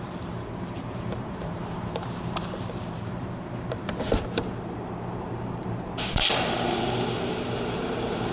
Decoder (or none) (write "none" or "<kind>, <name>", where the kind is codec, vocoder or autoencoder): vocoder, BigVGAN v2